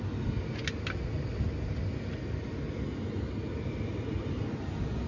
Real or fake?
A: real